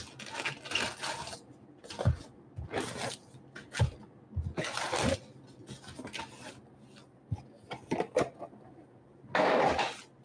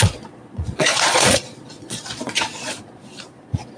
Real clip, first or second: first